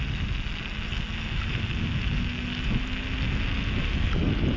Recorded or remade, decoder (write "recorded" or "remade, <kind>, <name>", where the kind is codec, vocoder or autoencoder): recorded